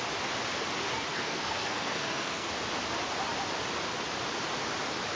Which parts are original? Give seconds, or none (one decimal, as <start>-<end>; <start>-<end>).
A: 0.0-1.1; 2.5-5.2